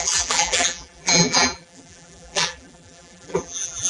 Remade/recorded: remade